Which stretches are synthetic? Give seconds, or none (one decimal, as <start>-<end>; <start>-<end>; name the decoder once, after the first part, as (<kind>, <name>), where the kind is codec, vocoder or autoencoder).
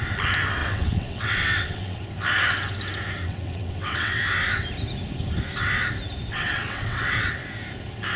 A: 0.6-2.0 (vocoder, WaveNeXt); 3.2-4.2; 6.3-7.4